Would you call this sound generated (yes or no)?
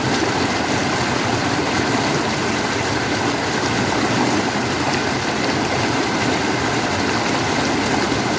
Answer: no